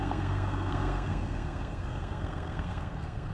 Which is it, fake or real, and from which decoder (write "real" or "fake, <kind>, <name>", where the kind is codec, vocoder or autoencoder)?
fake, codec, SNAC